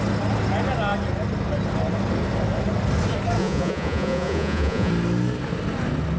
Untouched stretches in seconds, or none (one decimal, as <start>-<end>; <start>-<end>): 0.0-3.4; 4.9-6.2